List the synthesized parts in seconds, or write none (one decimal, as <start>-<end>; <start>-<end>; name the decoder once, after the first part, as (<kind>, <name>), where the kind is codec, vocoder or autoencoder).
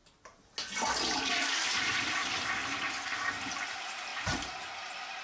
1.3-5.2 (vocoder, BigVGAN v2)